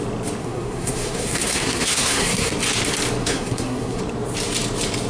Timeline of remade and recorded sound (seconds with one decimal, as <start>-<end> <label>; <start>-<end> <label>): 0.0-0.4 recorded; 0.4-2.5 remade; 2.5-3.2 recorded; 3.2-4.0 remade; 4.0-5.1 recorded